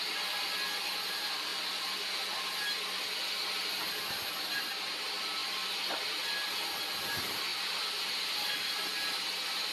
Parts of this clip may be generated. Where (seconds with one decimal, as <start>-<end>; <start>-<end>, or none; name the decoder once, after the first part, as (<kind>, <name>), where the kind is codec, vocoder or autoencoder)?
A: 5.4-6.0 (vocoder, BigVGAN v2)